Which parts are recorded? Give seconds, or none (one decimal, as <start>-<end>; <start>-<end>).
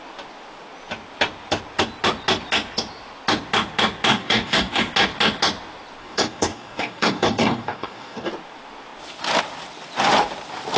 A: 0.0-4.1; 4.8-6.0; 8.3-10.8